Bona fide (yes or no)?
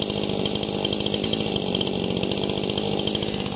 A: yes